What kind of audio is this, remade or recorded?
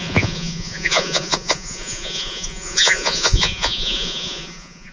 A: remade